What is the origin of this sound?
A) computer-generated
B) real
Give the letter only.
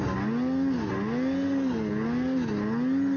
B